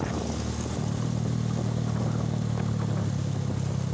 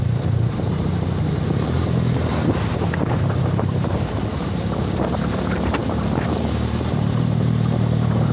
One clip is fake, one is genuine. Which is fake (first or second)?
second